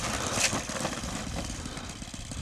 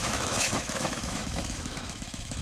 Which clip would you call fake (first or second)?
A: second